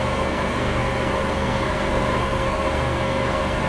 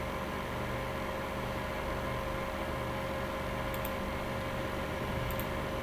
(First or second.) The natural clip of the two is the second